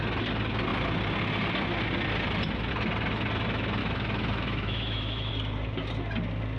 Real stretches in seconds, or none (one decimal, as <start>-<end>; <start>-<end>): 0.0-3.8; 5.3-6.6